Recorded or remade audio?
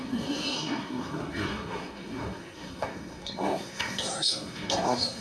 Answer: remade